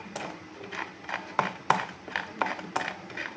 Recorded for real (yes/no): yes